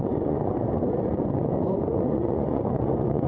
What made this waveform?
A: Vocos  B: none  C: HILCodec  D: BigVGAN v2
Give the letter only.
A